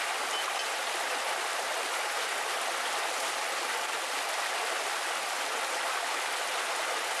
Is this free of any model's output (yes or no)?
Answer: yes